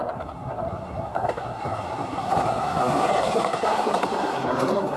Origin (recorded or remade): remade